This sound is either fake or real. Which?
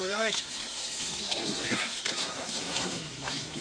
fake